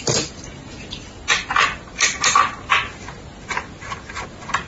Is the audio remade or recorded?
recorded